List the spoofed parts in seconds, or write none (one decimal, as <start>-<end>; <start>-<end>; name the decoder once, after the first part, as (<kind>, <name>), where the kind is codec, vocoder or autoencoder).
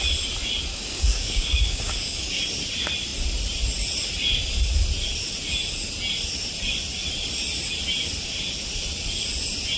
0.7-2.4 (codec, DAC)